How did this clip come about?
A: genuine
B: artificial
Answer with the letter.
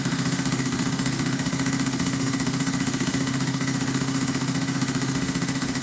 B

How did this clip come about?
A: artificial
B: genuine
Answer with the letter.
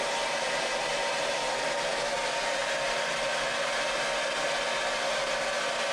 B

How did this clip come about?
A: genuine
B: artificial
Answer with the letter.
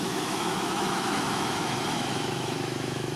B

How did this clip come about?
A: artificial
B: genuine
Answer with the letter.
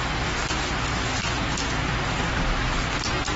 B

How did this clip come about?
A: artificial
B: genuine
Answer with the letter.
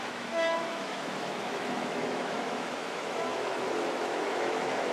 A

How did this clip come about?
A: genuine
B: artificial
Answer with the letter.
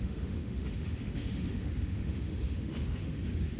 B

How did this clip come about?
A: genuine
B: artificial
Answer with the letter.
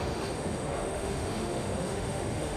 B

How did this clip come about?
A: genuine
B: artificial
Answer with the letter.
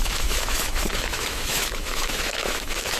B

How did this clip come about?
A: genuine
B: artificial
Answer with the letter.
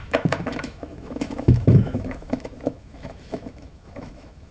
B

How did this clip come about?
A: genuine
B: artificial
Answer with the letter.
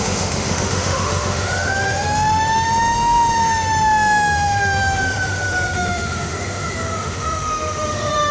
B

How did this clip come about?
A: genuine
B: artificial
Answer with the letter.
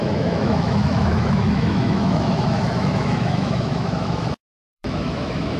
B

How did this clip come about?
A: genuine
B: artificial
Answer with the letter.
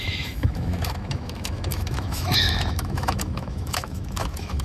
B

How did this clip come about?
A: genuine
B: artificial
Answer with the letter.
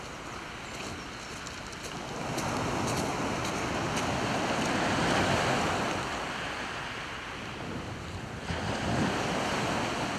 A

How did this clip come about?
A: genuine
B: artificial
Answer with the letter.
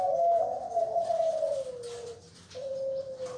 A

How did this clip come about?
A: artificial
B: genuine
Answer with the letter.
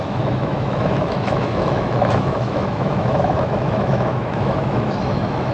A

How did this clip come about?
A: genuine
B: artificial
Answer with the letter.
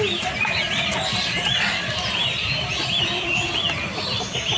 A